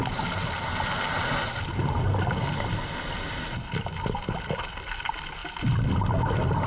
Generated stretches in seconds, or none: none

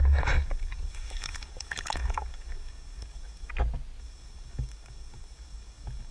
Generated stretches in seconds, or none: 0.0-3.5 (codec, DAC); 4.0-6.1

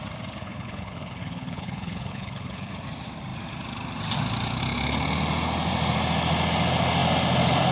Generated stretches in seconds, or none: 0.4-2.7 (codec, HILCodec)

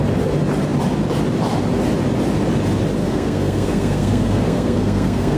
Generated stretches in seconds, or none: 3.0-5.4 (codec, SNAC)

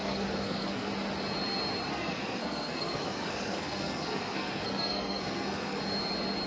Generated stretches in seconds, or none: 0.0-0.9 (codec, SNAC); 1.9-5.8

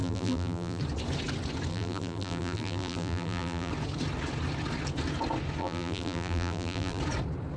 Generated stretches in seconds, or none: 0.0-0.8 (vocoder, BigVGAN v2); 1.7-3.7; 5.6-7.0

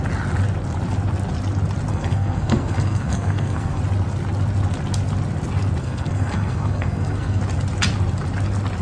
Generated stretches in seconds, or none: 1.9-3.8 (codec, SNAC); 5.8-7.4

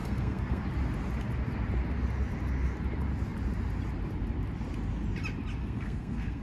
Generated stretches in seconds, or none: 0.0-0.6 (codec, SNAC); 5.6-6.4